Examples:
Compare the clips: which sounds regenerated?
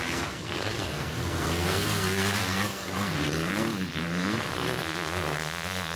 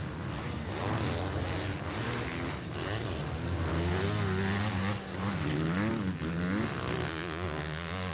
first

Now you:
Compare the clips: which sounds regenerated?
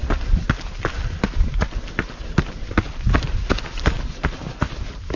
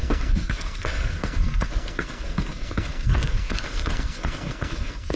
second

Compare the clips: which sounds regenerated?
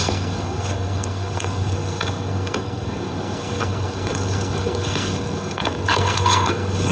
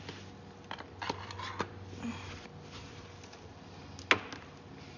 first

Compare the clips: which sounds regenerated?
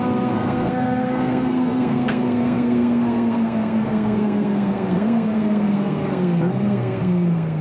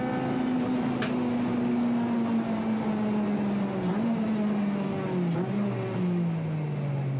first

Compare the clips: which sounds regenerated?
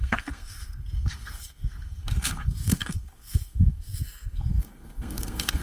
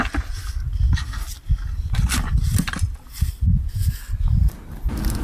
first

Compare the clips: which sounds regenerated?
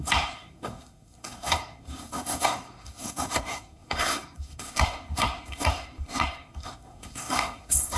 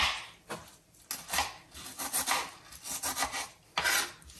first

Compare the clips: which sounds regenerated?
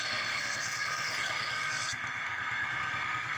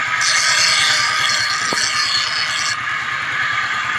first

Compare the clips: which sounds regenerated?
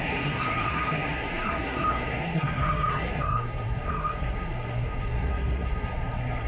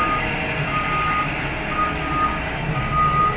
first